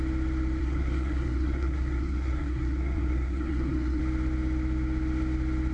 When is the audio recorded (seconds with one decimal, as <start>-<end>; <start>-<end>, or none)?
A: 0.0-0.6; 4.0-5.7